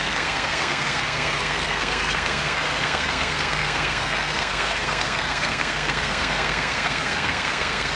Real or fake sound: fake